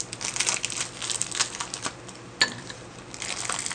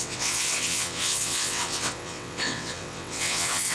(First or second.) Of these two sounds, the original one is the first